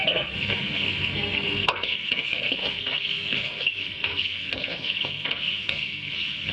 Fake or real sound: fake